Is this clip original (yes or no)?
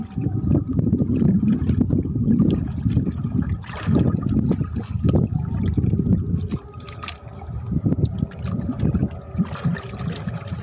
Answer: yes